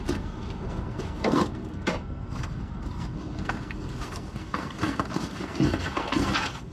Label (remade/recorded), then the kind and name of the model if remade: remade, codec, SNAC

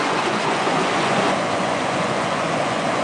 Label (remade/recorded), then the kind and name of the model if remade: remade, vocoder, Vocos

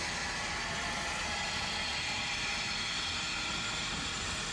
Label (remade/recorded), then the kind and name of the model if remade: recorded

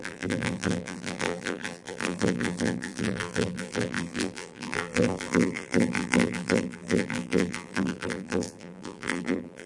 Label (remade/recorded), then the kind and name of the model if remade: remade, vocoder, BigVGAN v2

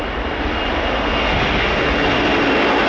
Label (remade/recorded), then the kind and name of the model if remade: recorded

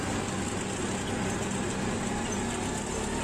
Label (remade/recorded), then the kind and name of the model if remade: recorded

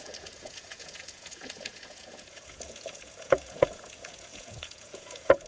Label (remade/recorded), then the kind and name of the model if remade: remade, vocoder, Vocos